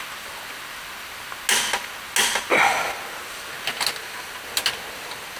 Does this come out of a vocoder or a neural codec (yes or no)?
no